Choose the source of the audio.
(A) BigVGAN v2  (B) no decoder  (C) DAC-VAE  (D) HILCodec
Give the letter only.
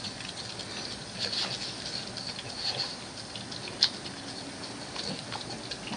B